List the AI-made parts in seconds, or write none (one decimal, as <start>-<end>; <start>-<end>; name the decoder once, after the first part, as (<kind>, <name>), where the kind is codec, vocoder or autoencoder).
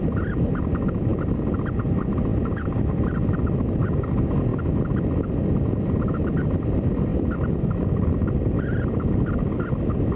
none